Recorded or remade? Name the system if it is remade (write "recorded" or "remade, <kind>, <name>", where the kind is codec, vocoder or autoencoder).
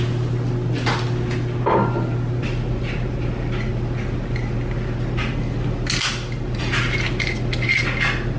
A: recorded